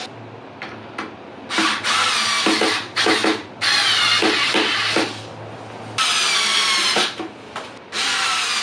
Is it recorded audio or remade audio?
recorded